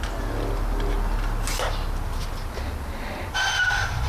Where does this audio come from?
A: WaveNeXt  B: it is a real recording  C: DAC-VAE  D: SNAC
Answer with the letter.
B